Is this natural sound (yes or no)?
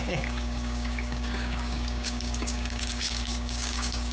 no